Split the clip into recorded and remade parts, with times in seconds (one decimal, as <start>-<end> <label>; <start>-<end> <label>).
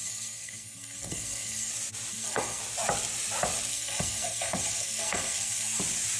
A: 0.0-1.7 remade; 1.7-2.1 recorded; 2.1-2.6 remade; 2.6-3.7 recorded; 3.7-5.8 remade; 5.8-6.2 recorded